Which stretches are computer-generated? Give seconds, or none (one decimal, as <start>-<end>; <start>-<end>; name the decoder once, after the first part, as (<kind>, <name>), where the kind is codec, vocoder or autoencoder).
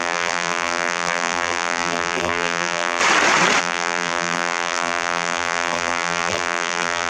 0.0-3.0 (vocoder, BigVGAN v2); 3.6-7.1